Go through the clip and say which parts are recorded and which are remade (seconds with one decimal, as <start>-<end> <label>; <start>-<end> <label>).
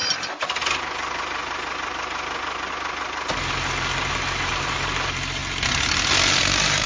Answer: 0.0-4.1 recorded; 4.1-5.4 remade; 5.4-6.4 recorded; 6.4-6.9 remade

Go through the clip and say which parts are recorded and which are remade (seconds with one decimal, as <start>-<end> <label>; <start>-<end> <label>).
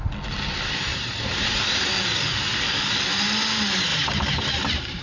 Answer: 0.0-0.9 recorded; 0.9-2.3 remade; 2.3-3.9 recorded; 3.9-5.0 remade